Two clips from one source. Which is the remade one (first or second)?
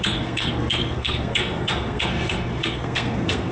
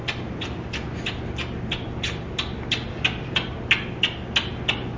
first